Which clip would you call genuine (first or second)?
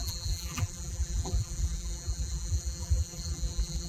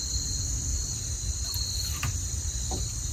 second